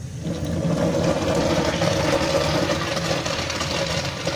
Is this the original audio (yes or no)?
yes